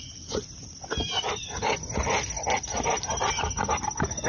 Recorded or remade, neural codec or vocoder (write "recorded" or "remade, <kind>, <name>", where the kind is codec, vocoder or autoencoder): recorded